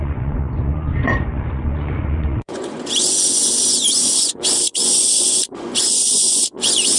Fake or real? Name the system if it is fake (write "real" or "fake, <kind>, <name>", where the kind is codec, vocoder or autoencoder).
fake, vocoder, Vocos